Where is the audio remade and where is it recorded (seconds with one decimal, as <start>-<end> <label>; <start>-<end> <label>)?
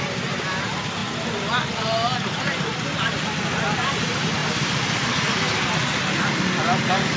0.0-1.0 recorded; 1.0-4.0 remade; 4.0-4.4 recorded; 4.4-5.7 remade; 5.7-7.2 recorded